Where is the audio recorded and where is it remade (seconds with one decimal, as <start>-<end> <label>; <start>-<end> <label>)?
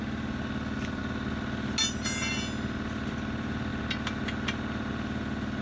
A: 0.0-5.6 recorded